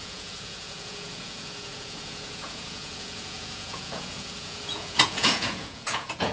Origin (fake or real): fake